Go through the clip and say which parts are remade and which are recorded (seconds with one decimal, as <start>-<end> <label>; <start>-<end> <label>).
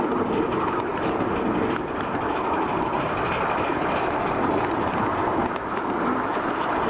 0.0-6.9 recorded